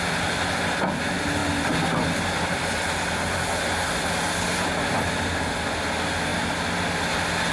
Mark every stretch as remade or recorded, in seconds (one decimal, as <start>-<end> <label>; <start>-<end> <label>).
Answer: 0.0-7.5 recorded